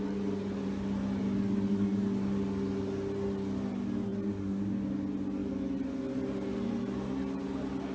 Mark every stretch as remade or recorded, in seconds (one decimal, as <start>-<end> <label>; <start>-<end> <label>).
0.0-7.9 recorded